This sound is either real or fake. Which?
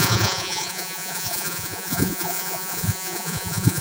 fake